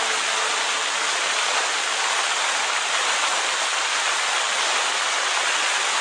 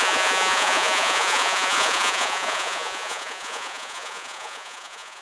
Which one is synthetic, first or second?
second